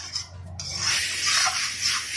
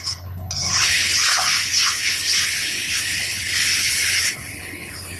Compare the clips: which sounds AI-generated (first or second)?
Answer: second